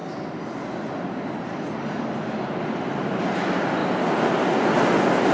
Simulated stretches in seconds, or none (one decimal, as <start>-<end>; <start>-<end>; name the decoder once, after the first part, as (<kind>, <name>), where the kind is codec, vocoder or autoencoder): none